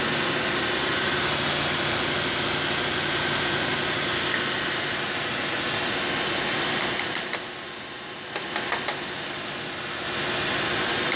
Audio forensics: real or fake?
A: real